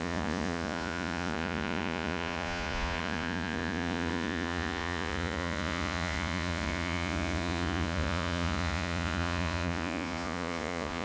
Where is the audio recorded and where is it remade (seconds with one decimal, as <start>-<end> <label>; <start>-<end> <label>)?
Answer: 0.0-11.0 remade